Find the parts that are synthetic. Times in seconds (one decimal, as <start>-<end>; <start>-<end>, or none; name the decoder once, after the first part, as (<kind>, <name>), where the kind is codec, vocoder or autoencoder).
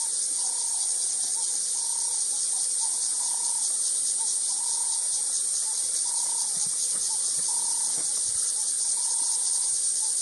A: none